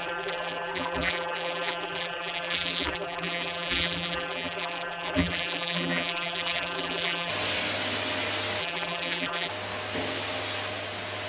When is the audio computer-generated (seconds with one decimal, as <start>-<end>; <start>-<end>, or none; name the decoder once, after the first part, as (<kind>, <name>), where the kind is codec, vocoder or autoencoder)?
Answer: 0.0-7.3 (vocoder, BigVGAN v2); 8.6-9.5